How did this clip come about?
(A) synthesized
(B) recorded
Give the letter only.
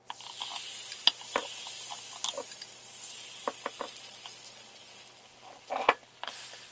B